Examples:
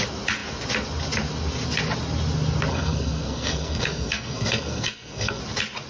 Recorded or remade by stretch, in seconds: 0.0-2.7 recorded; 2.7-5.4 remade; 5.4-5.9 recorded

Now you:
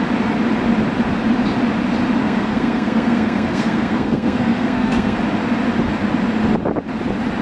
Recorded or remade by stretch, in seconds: 0.0-2.2 recorded; 2.2-5.2 remade; 5.2-7.4 recorded

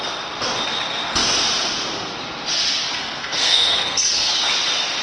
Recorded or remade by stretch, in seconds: 0.0-3.0 recorded; 3.0-4.3 remade; 4.3-5.0 recorded

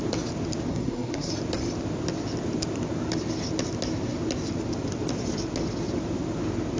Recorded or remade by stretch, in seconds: 0.0-0.7 recorded; 0.7-1.3 remade; 1.3-6.8 recorded

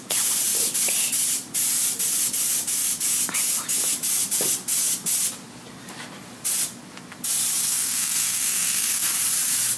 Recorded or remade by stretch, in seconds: 0.0-7.7 recorded; 7.7-9.1 remade; 9.1-9.8 recorded

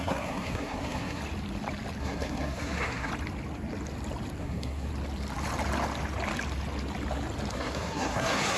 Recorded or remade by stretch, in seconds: 0.0-1.2 remade; 1.2-2.0 recorded; 2.0-3.1 remade; 3.1-4.4 recorded; 4.4-4.9 remade; 4.9-7.5 recorded; 7.5-8.6 remade

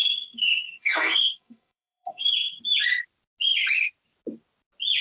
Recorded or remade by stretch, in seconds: 0.0-2.3 remade; 2.3-5.0 recorded